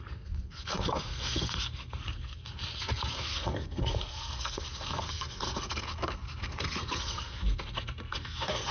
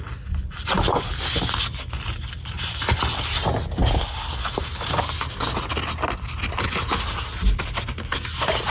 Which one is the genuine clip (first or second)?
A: second